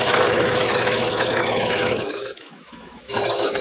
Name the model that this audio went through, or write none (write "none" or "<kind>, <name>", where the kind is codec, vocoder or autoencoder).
autoencoder, DAC-VAE